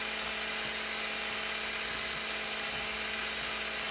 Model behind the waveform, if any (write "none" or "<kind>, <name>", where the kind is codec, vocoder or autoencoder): none